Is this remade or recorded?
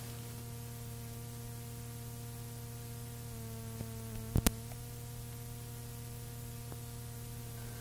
recorded